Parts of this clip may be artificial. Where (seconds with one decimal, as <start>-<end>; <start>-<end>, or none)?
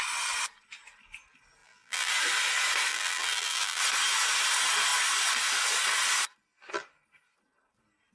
1.6-2.1; 2.9-3.8